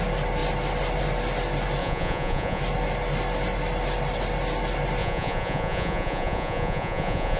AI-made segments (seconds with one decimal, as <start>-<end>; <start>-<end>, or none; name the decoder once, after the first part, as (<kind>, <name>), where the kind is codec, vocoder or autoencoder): 1.8-2.6 (vocoder, Vocos); 5.0-7.4